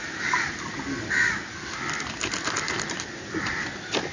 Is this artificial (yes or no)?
no